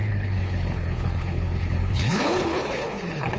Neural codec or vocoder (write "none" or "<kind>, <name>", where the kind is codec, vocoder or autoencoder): codec, HILCodec